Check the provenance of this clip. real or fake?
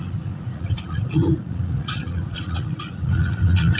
fake